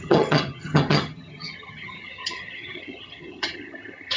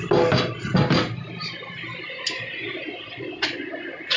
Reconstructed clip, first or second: first